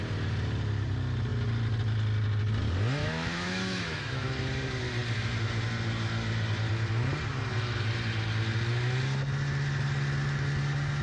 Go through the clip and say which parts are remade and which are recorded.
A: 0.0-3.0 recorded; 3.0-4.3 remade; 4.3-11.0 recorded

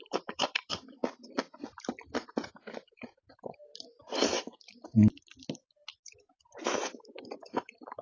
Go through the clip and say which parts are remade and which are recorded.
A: 0.0-1.0 remade; 1.0-2.3 recorded; 2.3-3.7 remade; 3.7-5.9 recorded; 5.9-8.0 remade

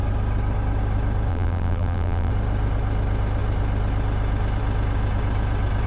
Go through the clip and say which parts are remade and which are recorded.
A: 0.0-1.3 recorded; 1.3-2.3 remade; 2.3-5.9 recorded

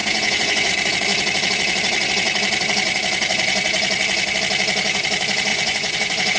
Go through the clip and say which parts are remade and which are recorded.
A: 0.0-0.7 remade; 0.7-5.5 recorded; 5.5-6.4 remade

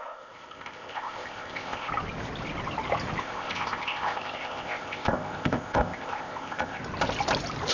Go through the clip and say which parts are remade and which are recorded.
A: 0.0-1.9 remade; 1.9-3.2 recorded; 3.2-6.8 remade; 6.8-7.7 recorded

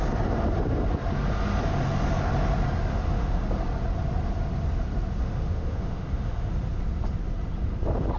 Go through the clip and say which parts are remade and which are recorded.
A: 0.0-2.9 recorded; 2.9-3.5 remade; 3.5-5.2 recorded; 5.2-6.5 remade; 6.5-8.2 recorded

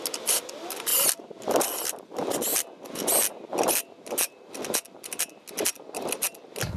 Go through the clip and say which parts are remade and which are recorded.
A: 0.0-6.8 recorded